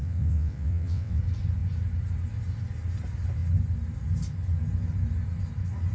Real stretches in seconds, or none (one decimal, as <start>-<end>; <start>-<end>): 1.2-5.9